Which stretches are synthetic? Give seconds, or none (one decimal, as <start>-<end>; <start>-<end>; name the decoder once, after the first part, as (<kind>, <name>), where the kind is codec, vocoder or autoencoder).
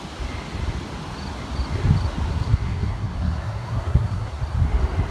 2.3-4.4 (codec, SNAC)